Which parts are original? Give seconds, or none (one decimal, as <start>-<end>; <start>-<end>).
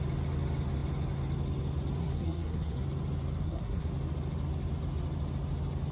0.0-2.0; 2.8-3.4; 3.9-5.9